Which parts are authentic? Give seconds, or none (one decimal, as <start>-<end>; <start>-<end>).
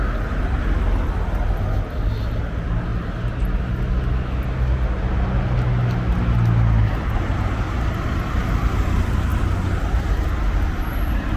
0.0-11.4